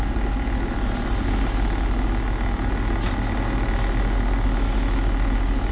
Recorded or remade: recorded